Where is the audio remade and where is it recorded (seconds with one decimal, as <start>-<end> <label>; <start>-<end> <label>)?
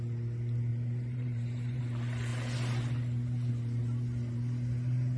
0.0-0.7 recorded; 0.7-1.8 remade; 1.8-5.2 recorded